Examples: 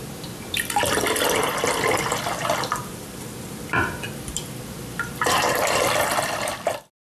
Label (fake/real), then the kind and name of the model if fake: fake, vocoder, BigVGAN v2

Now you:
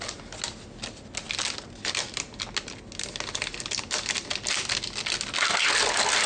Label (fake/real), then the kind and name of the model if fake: real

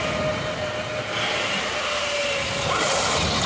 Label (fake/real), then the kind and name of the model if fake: real